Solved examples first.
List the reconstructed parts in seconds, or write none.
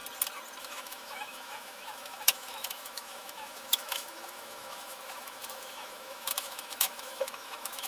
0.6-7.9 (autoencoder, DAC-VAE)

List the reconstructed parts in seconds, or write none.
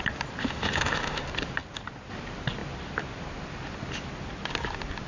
0.4-1.2 (autoencoder, DAC-VAE)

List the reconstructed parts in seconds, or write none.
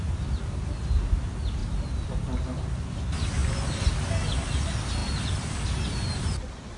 none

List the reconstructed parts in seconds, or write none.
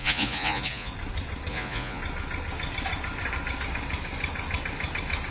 0.0-0.9 (vocoder, Vocos); 1.5-2.0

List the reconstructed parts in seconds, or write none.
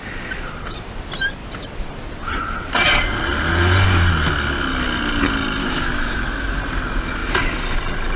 5.6-6.6 (autoencoder, DAC-VAE)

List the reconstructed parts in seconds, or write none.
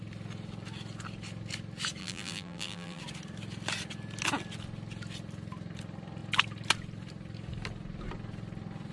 2.0-3.0 (vocoder, BigVGAN v2)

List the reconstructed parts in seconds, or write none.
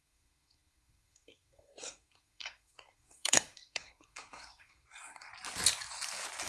0.0-5.3 (codec, SNAC)